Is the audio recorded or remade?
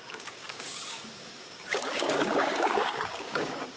remade